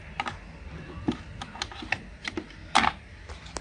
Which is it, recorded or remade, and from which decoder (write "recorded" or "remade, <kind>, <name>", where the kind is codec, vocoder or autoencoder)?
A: recorded